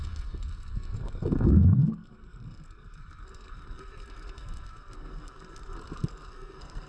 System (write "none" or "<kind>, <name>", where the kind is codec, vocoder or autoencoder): codec, SNAC